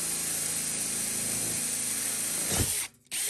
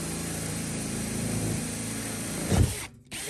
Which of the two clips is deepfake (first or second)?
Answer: second